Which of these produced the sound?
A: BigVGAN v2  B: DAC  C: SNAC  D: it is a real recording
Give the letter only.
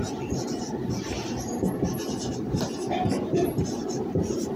A